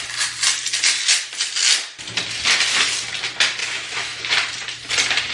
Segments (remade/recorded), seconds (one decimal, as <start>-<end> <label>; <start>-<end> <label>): 0.0-3.6 recorded; 3.6-4.2 remade; 4.2-5.3 recorded